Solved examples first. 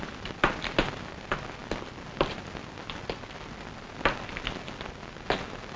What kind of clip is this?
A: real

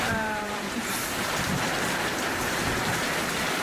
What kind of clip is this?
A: fake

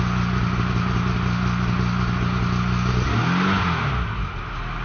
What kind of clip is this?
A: real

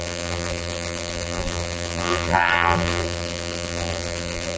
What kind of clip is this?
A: fake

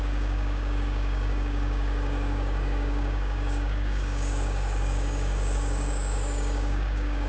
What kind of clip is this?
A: fake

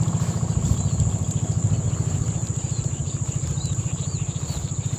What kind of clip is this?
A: real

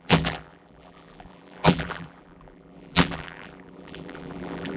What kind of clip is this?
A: fake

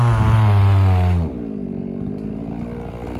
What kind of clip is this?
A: real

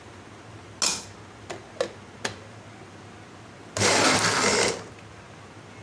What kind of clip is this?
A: real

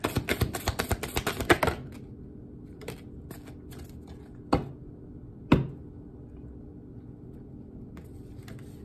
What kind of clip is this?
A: real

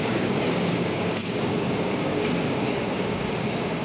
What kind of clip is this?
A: fake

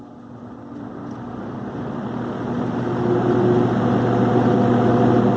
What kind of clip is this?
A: real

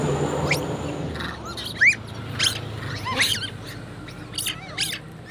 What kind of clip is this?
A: real